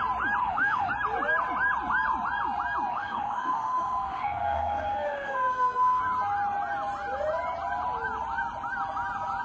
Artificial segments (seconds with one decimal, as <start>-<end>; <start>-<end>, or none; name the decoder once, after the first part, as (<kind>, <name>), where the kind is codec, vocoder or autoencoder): 0.4-0.9 (autoencoder, DAC-VAE); 2.9-6.0